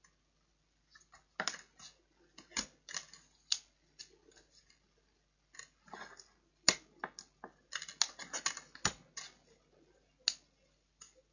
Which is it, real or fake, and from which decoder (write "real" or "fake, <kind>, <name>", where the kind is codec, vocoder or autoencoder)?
real